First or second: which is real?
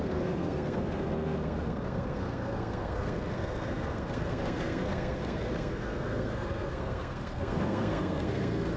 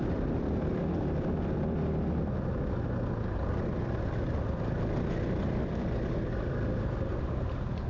second